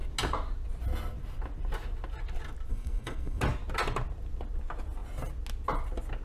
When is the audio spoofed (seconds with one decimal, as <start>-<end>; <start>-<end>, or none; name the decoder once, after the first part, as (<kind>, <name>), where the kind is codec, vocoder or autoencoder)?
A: 2.7-3.4 (codec, SNAC)